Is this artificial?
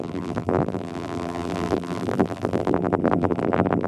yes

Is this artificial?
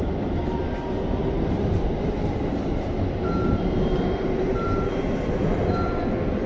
yes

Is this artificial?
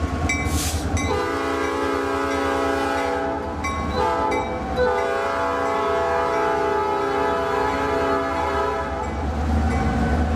no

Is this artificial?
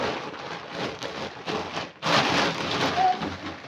no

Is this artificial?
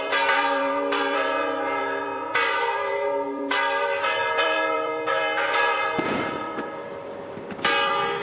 yes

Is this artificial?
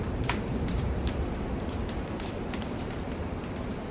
yes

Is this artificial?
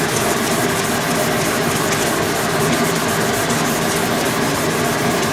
yes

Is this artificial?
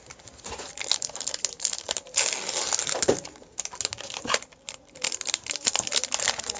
no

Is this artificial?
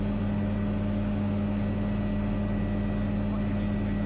no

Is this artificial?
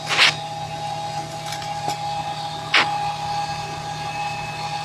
no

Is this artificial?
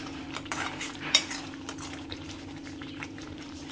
yes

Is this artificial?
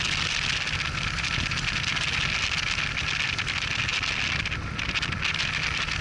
no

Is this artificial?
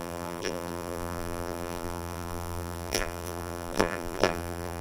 yes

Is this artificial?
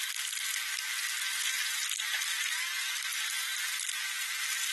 no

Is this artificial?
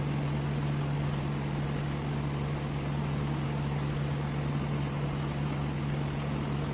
no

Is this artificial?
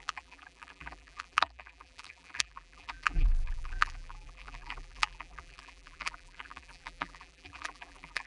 yes